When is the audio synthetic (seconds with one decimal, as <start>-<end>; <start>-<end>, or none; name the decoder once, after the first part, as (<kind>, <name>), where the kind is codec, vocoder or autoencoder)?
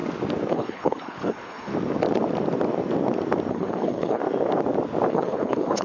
0.5-1.7 (codec, HILCodec); 3.5-4.2; 5.1-5.8